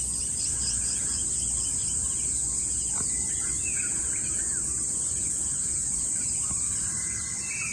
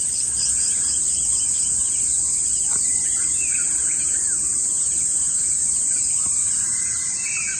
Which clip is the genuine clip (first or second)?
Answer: first